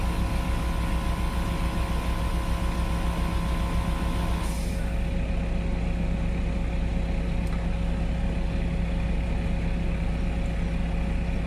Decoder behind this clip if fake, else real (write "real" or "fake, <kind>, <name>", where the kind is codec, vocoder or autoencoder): real